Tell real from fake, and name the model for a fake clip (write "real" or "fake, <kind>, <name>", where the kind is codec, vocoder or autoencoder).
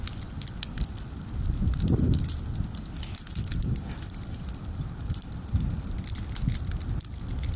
real